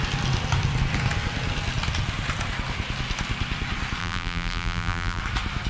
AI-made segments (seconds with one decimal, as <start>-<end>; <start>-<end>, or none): 4.0-5.2